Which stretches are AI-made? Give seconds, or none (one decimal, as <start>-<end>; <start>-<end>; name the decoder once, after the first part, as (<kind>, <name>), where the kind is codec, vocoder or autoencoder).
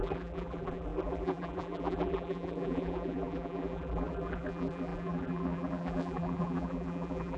0.0-7.4 (vocoder, BigVGAN v2)